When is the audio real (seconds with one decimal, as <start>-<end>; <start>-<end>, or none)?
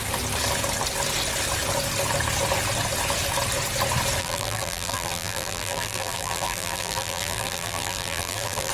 0.0-4.2